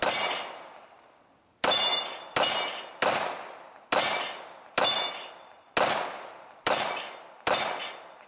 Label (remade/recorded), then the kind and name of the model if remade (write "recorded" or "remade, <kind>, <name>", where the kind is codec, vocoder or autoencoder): recorded